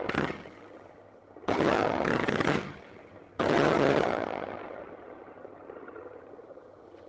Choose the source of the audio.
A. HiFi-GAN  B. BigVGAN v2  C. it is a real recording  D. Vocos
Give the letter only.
A